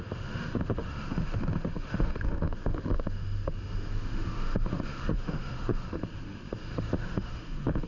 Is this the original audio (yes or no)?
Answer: no